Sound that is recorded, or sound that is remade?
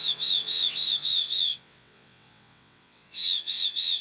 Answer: remade